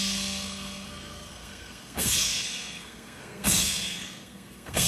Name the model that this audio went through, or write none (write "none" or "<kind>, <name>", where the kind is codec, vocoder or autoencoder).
codec, SNAC